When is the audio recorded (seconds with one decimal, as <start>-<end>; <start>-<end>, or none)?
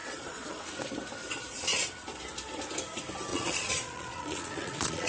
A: 0.6-1.2; 1.9-3.3